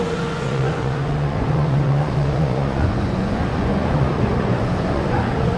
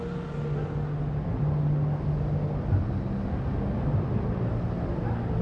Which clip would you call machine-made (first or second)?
first